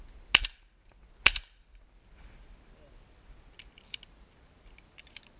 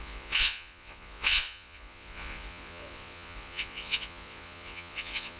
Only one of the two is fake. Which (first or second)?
second